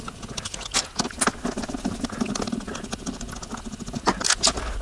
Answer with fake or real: real